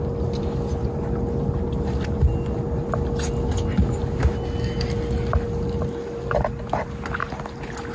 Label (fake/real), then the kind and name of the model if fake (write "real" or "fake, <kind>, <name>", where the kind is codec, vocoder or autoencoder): real